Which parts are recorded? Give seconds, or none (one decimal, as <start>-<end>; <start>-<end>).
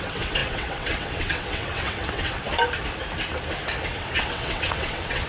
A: 2.4-3.9